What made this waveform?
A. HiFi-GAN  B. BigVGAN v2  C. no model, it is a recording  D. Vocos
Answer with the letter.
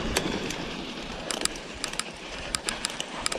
B